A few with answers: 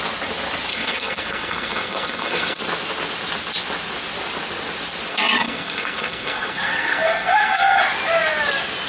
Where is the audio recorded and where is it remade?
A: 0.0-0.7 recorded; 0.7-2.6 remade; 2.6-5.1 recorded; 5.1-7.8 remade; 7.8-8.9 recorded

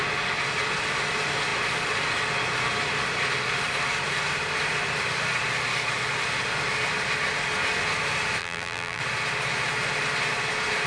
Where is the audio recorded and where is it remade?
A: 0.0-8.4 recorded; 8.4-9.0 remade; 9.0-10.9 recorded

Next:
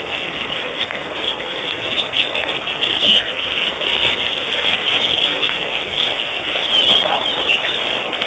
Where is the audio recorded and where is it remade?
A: 0.0-6.7 remade; 6.7-7.5 recorded; 7.5-8.3 remade

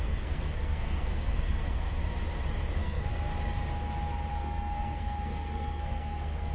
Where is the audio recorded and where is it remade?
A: 0.0-2.0 remade; 2.0-2.8 recorded; 2.8-3.3 remade; 3.3-4.3 recorded; 4.3-6.5 remade